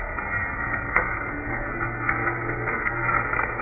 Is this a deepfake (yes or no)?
yes